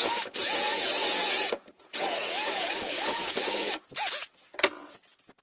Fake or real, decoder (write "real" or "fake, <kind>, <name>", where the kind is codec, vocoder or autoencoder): fake, vocoder, Vocos